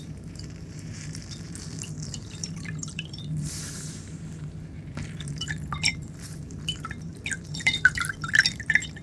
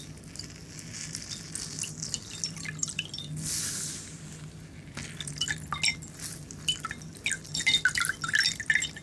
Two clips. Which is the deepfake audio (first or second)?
first